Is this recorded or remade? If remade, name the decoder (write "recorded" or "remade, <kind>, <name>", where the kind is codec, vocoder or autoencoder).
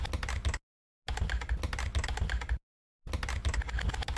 recorded